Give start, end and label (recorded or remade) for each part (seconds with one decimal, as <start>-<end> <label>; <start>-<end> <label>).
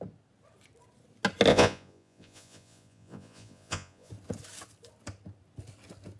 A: 0.0-1.5 recorded; 1.5-4.1 remade; 4.1-6.2 recorded